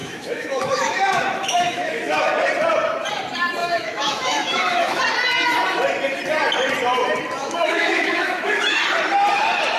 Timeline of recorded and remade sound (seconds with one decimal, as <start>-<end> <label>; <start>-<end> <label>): 0.0-2.3 remade; 2.3-3.6 recorded; 3.6-5.0 remade; 5.0-7.4 recorded; 7.4-8.7 remade; 8.7-9.8 recorded